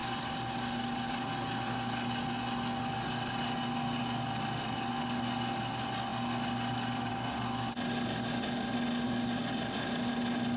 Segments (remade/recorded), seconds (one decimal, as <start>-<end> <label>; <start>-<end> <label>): 0.0-10.6 recorded